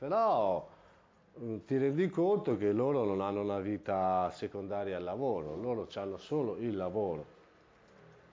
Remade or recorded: recorded